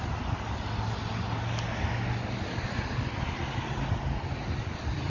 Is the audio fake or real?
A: real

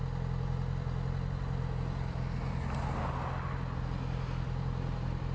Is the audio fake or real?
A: real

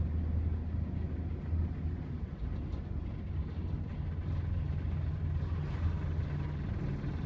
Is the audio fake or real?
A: real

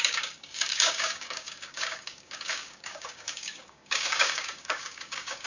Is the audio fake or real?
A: fake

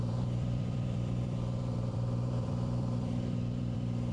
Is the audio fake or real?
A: fake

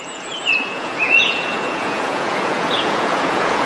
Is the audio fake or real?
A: fake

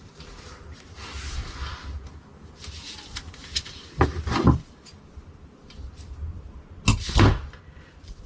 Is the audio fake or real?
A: real